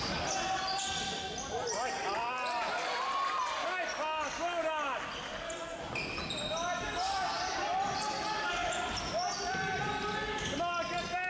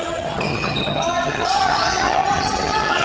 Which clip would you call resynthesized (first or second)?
second